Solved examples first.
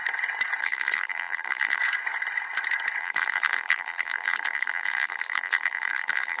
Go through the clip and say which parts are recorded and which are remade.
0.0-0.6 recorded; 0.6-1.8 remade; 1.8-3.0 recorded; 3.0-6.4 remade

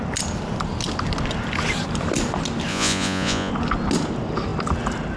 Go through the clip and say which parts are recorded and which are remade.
0.0-2.7 recorded; 2.7-3.5 remade; 3.5-5.2 recorded

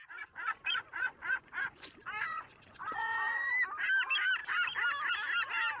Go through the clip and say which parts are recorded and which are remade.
0.0-3.5 remade; 3.5-5.8 recorded

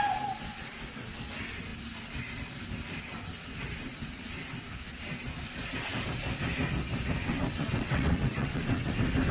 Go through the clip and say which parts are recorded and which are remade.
0.0-7.2 recorded; 7.2-8.9 remade; 8.9-9.3 recorded

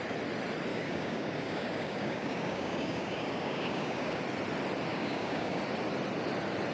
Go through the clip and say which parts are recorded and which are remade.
0.0-0.7 recorded; 0.7-4.2 remade; 4.2-4.9 recorded; 4.9-5.6 remade; 5.6-6.7 recorded